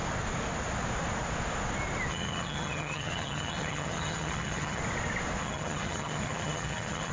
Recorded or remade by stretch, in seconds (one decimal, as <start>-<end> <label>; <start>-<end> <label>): 0.0-2.1 recorded; 2.1-4.8 remade; 4.8-5.4 recorded; 5.4-7.1 remade